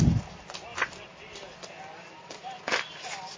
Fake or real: real